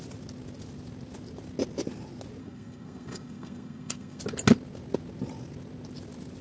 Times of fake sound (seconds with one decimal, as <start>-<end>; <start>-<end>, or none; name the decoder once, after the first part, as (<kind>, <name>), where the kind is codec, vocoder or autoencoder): 2.4-4.2 (codec, SNAC)